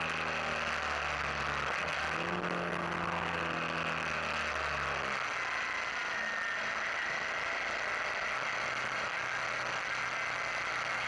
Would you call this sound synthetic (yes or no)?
no